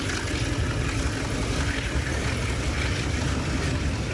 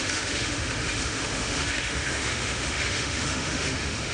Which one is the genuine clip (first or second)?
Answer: first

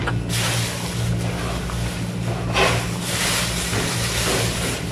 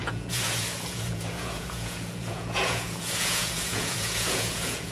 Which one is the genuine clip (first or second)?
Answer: first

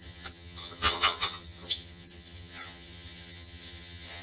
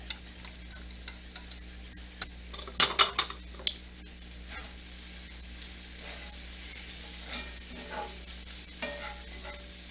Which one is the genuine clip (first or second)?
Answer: second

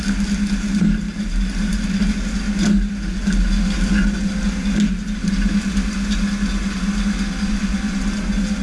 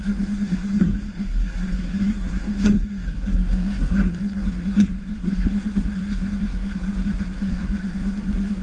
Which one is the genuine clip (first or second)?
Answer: first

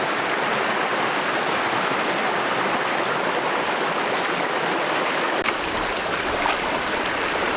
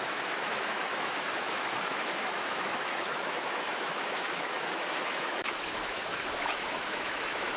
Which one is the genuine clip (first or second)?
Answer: first